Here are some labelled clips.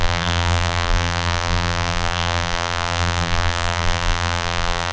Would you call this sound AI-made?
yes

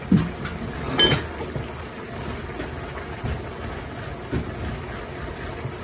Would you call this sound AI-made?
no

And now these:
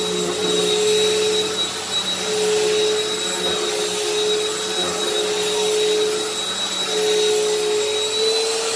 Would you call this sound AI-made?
no